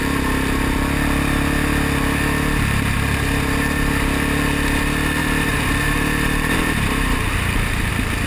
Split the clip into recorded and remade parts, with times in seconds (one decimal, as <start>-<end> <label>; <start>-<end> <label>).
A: 0.0-5.2 recorded; 5.2-7.9 remade; 7.9-8.3 recorded